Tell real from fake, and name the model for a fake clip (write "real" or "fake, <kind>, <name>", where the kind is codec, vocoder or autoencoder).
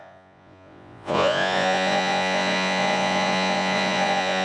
fake, vocoder, Vocos